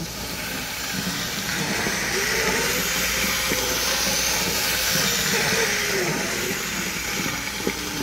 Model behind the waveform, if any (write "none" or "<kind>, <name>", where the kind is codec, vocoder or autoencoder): vocoder, BigVGAN v2